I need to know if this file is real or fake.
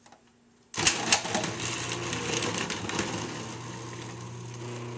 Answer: real